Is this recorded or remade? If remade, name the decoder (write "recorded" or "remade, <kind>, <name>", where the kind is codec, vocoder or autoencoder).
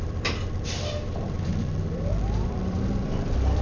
remade, vocoder, BigVGAN v2